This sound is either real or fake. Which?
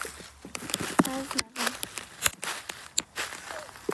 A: real